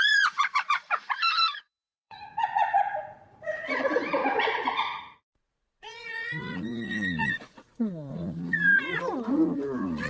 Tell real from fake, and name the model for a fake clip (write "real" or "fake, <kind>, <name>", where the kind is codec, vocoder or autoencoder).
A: fake, vocoder, Vocos